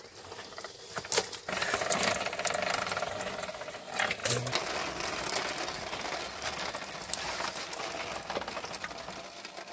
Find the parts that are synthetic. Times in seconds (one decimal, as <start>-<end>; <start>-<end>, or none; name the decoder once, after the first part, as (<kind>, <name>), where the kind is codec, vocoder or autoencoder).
none